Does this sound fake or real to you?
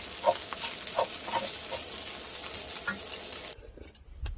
real